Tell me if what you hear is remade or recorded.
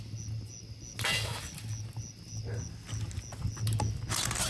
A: recorded